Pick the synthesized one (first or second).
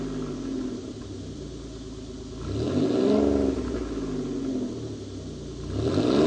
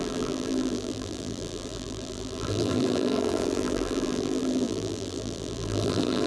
second